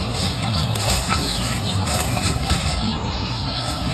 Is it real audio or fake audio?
fake